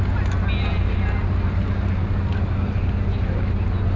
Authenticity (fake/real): real